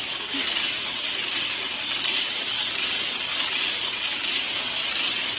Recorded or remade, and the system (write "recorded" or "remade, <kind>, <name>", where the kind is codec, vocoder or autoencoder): remade, vocoder, BigVGAN v2